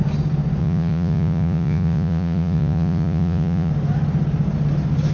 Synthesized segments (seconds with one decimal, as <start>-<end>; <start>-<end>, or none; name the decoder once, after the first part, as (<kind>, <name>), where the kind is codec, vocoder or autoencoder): 0.6-3.7 (vocoder, Vocos)